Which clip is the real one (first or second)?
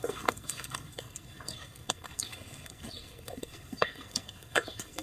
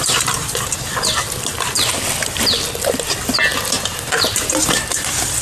second